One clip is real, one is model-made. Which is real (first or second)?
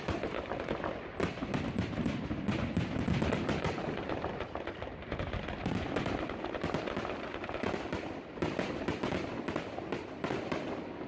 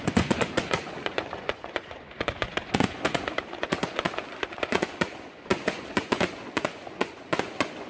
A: first